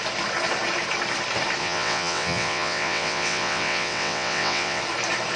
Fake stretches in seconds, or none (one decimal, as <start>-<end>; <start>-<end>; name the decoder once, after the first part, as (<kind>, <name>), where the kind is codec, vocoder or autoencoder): 1.6-4.8 (vocoder, WaveNeXt)

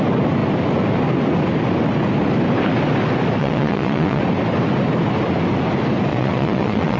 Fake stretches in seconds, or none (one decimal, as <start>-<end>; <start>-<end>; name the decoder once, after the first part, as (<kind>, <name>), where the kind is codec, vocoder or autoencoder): 3.4-4.2 (vocoder, WaveNeXt); 6.1-7.0

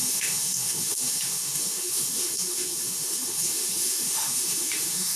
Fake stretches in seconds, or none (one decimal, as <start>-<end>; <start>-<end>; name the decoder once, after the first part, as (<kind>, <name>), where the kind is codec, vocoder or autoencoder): 0.0-5.2 (autoencoder, DAC-VAE)